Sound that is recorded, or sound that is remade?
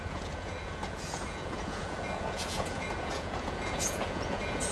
remade